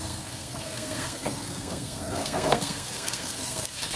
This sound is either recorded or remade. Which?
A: remade